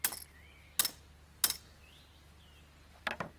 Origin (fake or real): real